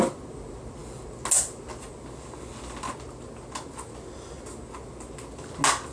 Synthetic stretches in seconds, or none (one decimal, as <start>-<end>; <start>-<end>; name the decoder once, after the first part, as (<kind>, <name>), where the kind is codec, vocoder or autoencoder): none